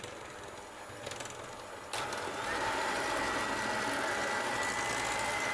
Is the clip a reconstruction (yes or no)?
no